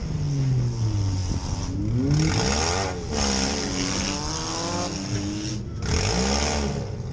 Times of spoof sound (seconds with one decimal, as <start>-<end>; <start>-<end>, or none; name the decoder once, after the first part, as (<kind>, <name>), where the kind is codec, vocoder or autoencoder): none